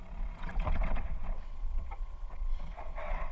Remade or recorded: remade